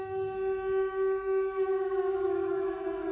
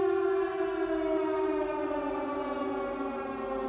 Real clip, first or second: second